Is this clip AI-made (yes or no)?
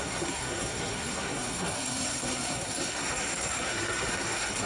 yes